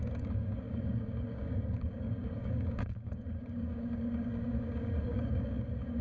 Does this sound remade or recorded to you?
remade